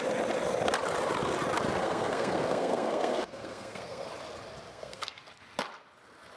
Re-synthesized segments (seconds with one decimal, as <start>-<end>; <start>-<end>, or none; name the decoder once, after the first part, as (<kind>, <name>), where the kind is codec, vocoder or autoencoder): 1.8-4.1 (codec, SNAC); 4.7-5.2